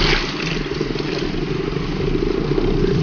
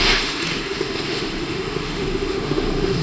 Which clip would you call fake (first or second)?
second